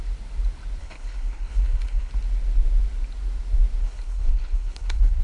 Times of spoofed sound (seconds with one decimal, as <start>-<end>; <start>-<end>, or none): 0.8-2.1; 3.8-5.2